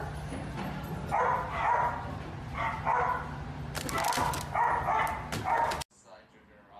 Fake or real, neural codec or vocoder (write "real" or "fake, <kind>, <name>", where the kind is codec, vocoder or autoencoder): real